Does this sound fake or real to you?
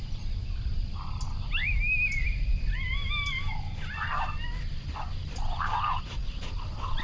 real